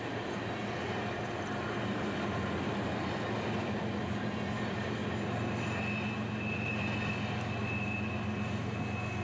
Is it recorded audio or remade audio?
recorded